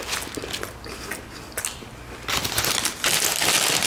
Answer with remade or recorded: recorded